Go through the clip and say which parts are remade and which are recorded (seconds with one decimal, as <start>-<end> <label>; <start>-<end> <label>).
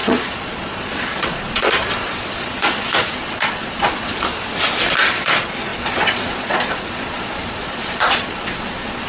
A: 0.0-4.3 remade; 4.3-5.0 recorded; 5.0-9.1 remade